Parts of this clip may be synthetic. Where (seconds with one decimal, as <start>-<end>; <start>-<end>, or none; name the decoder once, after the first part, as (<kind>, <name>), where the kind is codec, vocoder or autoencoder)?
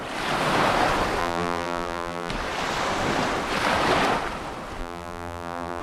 1.2-2.3 (vocoder, BigVGAN v2); 4.8-5.8